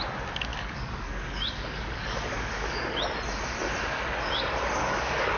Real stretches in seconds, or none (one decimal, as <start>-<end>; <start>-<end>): 0.0-0.5; 3.0-3.9